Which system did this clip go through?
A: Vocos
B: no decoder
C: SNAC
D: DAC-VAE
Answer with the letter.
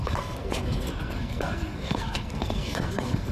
C